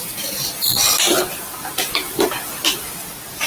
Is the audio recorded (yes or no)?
yes